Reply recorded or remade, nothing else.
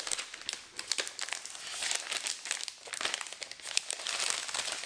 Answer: recorded